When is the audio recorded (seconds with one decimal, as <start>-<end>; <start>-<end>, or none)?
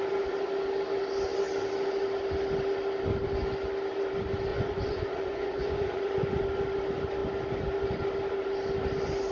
0.0-4.5; 6.4-9.3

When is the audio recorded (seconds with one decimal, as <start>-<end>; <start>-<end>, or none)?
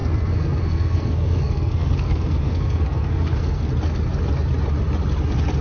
3.7-5.6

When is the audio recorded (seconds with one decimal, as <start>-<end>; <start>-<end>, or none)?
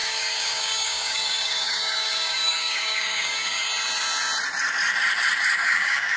3.7-5.6